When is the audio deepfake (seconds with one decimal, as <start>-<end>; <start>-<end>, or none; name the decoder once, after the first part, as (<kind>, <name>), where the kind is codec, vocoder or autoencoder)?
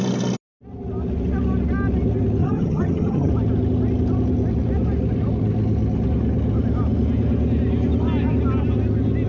2.4-3.3 (vocoder, HiFi-GAN)